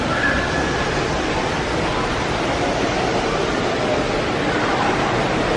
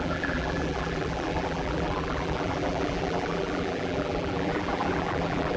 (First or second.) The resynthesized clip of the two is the second